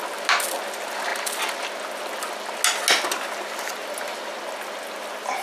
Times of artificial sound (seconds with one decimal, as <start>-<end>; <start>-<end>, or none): none

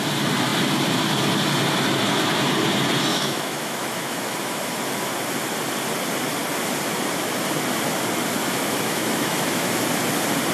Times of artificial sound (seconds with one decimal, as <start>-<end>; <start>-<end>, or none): 3.1-4.8; 8.4-9.8

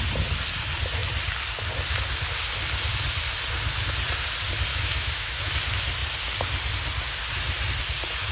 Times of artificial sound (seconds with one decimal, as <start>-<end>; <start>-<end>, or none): 4.7-5.5

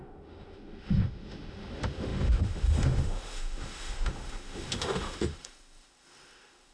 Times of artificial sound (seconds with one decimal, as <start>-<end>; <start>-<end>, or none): 0.0-6.7

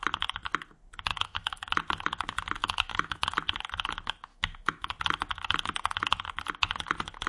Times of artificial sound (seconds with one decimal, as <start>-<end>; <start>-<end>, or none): 1.1-1.7; 2.6-3.2; 4.3-4.9